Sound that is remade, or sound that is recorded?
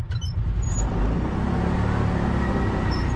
recorded